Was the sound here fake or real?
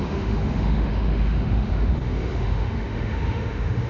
fake